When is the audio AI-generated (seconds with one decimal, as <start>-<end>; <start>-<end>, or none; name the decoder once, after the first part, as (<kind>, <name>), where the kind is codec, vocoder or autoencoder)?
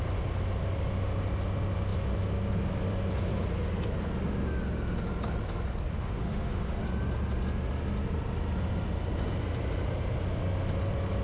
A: 5.9-6.8 (autoencoder, DAC-VAE)